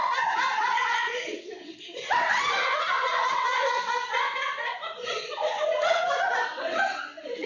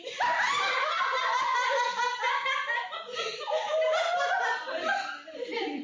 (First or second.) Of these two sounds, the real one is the second